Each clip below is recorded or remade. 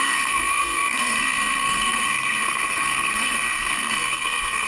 remade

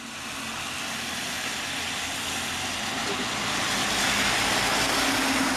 recorded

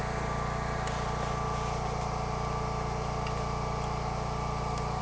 recorded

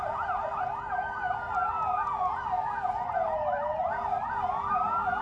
recorded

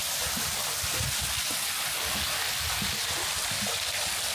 recorded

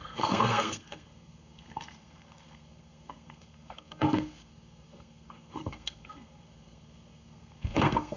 remade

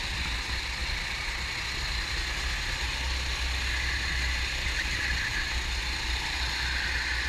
recorded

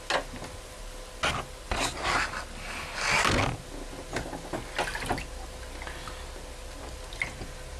recorded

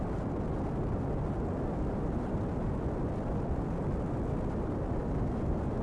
recorded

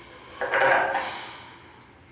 recorded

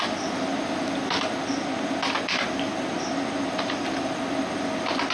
recorded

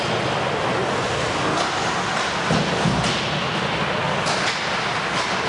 recorded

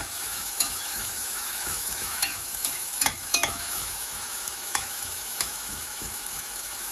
remade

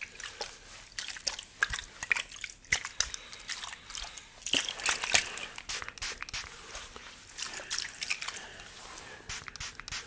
recorded